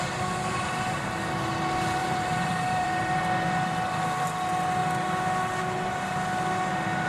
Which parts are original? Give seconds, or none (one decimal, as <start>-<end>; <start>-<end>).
0.0-2.0; 3.2-7.1